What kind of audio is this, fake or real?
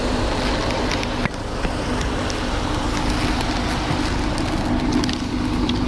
real